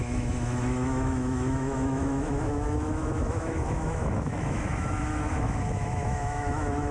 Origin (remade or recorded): remade